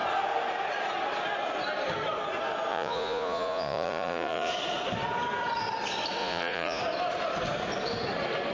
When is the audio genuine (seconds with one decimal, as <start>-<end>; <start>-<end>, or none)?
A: 0.0-2.7; 4.5-6.2; 6.8-8.5